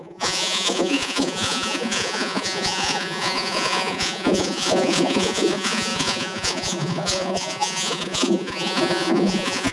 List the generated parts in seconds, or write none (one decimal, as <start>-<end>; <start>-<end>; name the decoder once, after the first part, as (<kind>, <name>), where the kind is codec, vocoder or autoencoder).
0.0-9.7 (vocoder, Vocos)

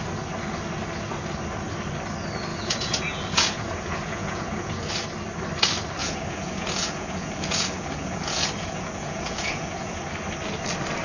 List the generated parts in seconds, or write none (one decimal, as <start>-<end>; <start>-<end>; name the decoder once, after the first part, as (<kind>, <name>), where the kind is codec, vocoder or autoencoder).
2.5-4.9 (vocoder, Vocos); 6.0-10.0